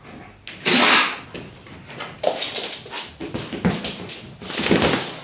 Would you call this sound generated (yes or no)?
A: no